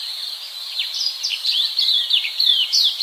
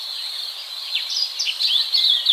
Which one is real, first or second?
second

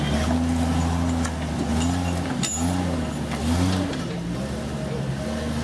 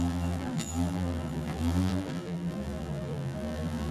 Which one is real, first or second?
first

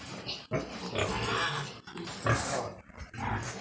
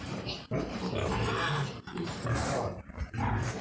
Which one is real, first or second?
first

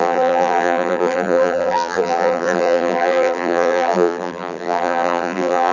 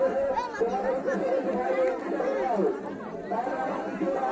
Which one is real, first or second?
second